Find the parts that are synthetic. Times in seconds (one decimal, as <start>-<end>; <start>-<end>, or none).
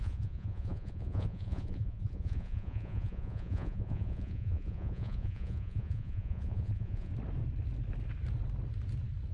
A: 0.0-7.1